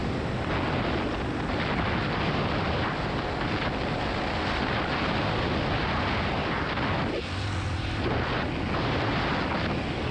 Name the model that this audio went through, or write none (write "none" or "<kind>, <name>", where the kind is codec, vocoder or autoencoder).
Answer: none